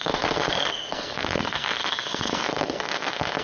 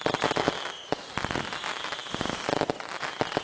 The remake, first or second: first